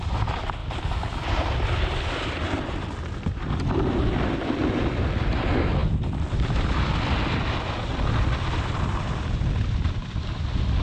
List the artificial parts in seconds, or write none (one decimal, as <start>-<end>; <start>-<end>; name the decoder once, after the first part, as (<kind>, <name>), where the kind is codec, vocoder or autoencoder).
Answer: 0.6-2.3 (vocoder, BigVGAN v2)